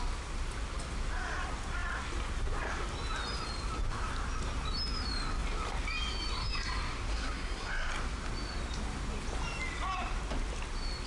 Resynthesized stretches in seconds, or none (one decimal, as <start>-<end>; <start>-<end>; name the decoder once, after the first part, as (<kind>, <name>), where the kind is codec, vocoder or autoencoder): 7.1-7.7 (codec, SNAC)